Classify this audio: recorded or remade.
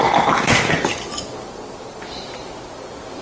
recorded